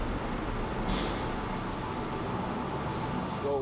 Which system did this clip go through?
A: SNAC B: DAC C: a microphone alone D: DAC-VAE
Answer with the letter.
C